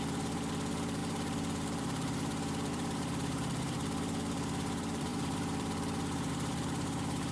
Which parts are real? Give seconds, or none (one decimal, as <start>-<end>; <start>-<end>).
none